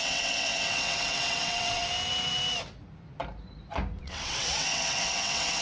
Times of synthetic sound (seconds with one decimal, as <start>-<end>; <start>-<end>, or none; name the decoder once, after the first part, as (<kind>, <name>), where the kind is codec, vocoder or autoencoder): 0.0-1.8 (vocoder, WaveNeXt); 4.0-5.6